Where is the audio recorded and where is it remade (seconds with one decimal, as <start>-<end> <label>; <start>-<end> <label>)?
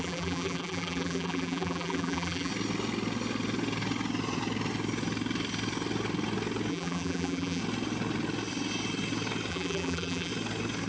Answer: 0.0-2.5 remade; 2.5-6.7 recorded; 6.7-7.6 remade; 7.6-9.5 recorded; 9.5-10.3 remade; 10.3-10.9 recorded